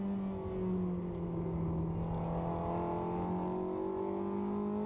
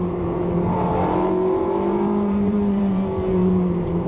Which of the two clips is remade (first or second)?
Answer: second